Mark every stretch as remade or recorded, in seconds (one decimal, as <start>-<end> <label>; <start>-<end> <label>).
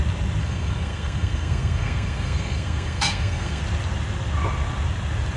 0.0-0.4 recorded; 0.4-3.6 remade; 3.6-5.4 recorded